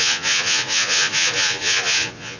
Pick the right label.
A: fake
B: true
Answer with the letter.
A